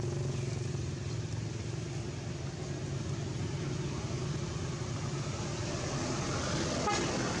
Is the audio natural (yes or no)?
yes